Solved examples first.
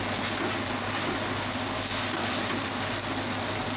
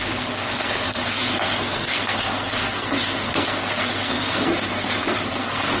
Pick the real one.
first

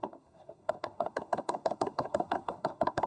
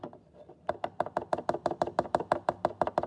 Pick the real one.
second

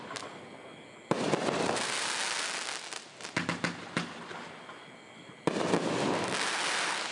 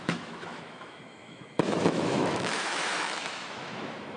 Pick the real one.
first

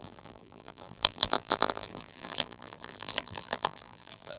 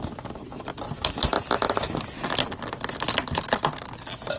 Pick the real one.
second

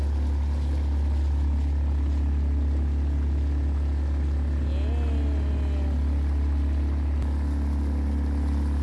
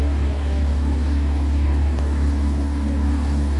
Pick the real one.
first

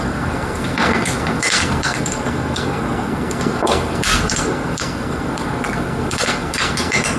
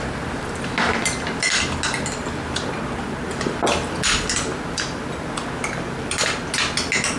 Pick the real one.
second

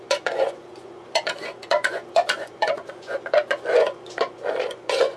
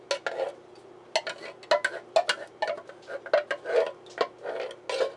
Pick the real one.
second